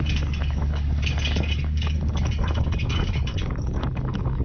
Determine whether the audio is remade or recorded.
remade